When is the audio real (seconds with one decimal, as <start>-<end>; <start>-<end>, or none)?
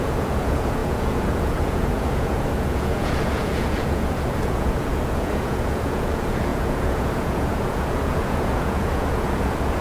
none